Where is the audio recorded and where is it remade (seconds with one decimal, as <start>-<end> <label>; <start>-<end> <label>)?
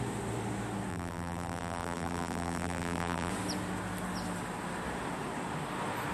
0.0-0.9 recorded; 0.9-3.3 remade; 3.3-6.1 recorded